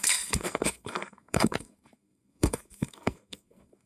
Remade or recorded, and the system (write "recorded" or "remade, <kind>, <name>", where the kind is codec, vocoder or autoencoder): remade, codec, SNAC